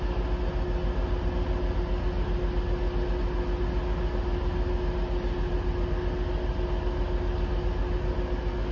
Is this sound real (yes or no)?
yes